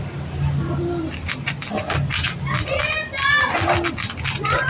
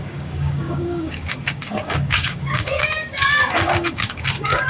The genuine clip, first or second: first